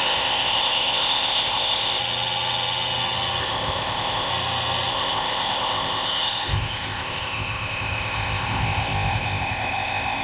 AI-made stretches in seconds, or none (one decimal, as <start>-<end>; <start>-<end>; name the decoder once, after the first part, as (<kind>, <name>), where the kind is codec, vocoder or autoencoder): 0.0-2.0 (codec, ZipCodec); 3.4-4.3; 4.9-10.2